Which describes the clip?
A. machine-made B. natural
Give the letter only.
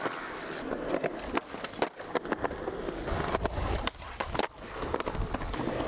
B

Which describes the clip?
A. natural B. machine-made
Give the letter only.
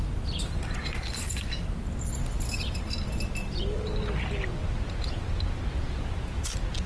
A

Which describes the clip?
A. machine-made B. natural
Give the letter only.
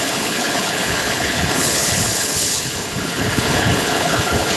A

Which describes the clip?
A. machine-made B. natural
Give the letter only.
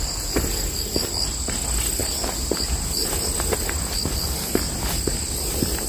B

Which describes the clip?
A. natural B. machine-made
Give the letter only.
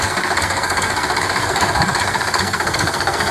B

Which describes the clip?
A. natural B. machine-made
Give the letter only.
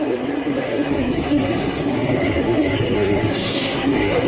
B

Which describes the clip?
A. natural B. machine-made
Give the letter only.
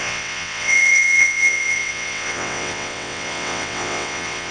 B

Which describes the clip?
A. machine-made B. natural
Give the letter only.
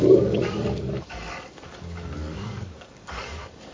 A